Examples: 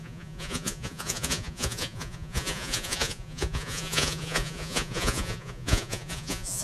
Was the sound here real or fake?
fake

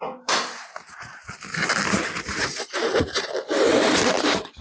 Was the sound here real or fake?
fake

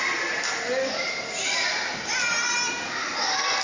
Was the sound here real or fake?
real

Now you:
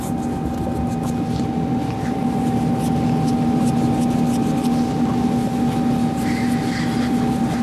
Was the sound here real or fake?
real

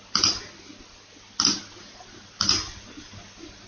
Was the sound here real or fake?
real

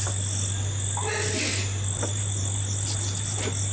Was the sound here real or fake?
real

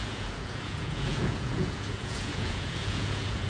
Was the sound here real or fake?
fake